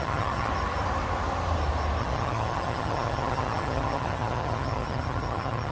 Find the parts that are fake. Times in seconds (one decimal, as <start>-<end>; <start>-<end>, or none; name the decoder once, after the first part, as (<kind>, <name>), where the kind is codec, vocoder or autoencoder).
0.0-0.5 (vocoder, HiFi-GAN); 2.0-5.7